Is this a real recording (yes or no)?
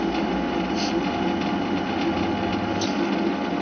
yes